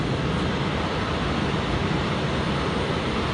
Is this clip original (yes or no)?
yes